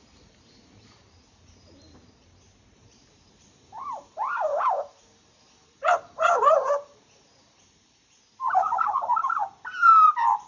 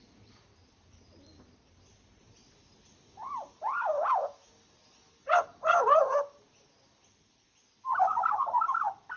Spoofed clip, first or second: first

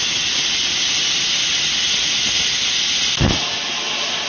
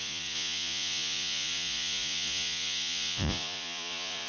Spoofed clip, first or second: second